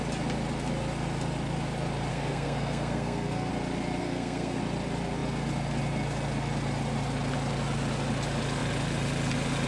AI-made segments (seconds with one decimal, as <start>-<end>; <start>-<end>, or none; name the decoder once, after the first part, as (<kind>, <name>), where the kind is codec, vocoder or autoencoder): 2.1-3.5 (codec, SNAC); 4.0-4.6